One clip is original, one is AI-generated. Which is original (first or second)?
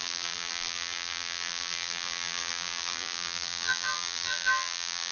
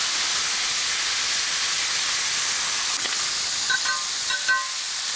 second